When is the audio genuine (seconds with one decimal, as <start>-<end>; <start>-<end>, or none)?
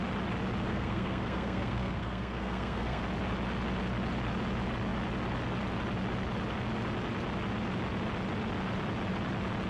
0.0-0.7; 3.0-9.7